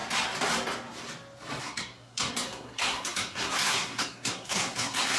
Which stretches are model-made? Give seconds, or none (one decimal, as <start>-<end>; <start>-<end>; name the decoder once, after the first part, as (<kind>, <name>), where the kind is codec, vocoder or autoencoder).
1.6-5.2 (codec, SNAC)